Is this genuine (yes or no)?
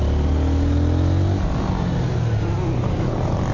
yes